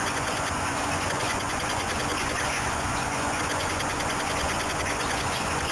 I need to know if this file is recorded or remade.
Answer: remade